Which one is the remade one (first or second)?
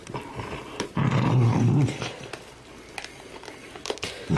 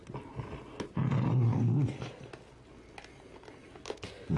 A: first